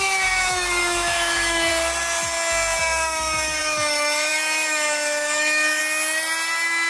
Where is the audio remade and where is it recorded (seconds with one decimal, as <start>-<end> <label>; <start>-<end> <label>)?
0.0-1.7 remade; 1.7-2.8 recorded; 2.8-5.8 remade; 5.8-6.9 recorded